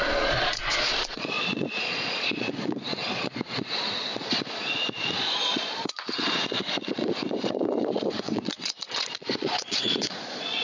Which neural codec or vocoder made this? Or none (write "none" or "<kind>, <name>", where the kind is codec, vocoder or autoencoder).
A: vocoder, Vocos